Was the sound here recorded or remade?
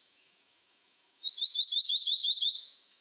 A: remade